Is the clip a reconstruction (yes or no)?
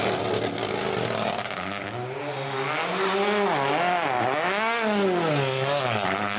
no